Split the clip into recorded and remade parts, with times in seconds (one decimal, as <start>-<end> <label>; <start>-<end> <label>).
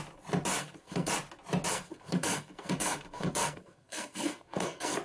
0.0-0.6 recorded; 0.6-1.1 remade; 1.1-1.7 recorded; 1.7-5.0 remade